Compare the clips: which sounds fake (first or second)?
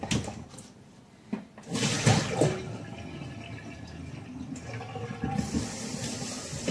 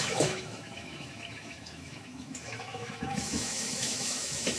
second